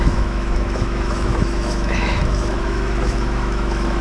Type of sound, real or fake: fake